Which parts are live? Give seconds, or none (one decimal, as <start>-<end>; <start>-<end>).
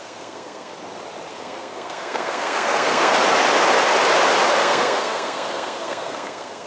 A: 0.7-1.3; 3.1-4.6